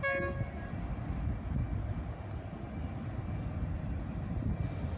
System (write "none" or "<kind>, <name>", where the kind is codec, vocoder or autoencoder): none